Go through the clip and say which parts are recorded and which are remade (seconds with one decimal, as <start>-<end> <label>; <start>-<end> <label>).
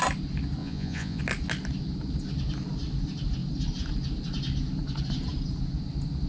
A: 0.0-0.6 recorded; 0.6-1.2 remade; 1.2-6.3 recorded